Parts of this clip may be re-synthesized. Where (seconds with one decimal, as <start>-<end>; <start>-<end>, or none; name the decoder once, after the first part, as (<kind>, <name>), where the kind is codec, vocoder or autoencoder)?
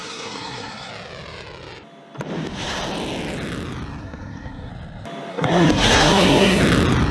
0.0-0.9 (codec, SNAC); 4.0-4.7; 5.3-6.6